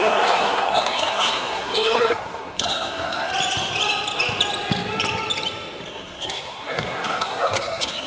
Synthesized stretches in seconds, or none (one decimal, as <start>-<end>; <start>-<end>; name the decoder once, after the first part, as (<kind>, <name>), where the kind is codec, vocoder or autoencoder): 0.0-3.3 (codec, SNAC); 5.9-8.1